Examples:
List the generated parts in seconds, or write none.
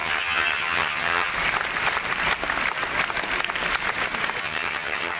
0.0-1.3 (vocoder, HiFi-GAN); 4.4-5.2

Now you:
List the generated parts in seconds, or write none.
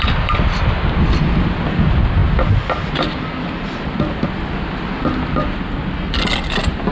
none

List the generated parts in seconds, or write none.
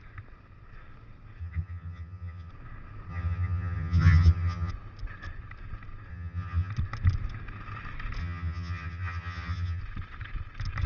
1.4-2.5 (vocoder, HiFi-GAN); 3.1-4.7; 6.1-6.7; 8.2-9.8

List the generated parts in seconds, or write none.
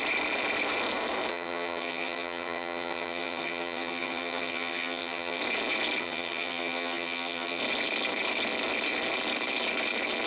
1.3-5.4 (vocoder, HiFi-GAN); 6.0-7.6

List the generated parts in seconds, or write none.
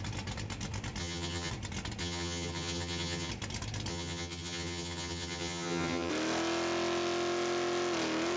1.0-1.5 (vocoder, HiFi-GAN); 2.0-3.3; 3.9-6.1